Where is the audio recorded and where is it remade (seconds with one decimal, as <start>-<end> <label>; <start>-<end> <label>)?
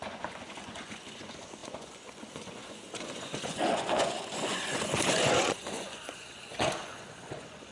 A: 0.0-7.7 remade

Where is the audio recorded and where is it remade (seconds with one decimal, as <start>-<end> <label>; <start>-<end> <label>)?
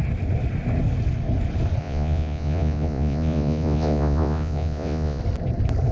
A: 0.0-1.8 recorded; 1.8-5.2 remade; 5.2-5.9 recorded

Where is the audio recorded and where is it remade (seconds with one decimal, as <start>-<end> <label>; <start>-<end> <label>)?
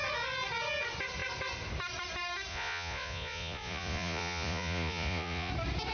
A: 0.0-2.5 recorded; 2.5-5.5 remade; 5.5-5.9 recorded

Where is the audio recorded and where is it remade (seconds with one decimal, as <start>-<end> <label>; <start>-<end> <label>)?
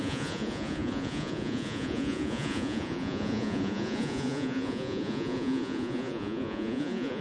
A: 0.0-7.2 remade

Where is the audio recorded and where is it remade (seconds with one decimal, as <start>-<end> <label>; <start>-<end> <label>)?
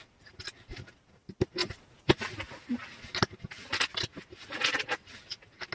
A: 0.0-5.7 recorded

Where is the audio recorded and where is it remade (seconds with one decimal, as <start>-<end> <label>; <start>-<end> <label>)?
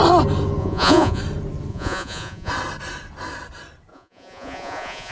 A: 0.0-0.6 recorded; 0.6-1.2 remade; 1.2-1.7 recorded; 1.7-2.5 remade; 2.5-3.9 recorded; 3.9-5.1 remade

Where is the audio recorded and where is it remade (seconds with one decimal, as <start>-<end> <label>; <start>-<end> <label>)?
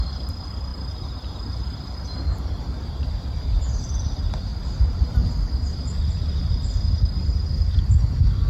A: 0.0-8.5 recorded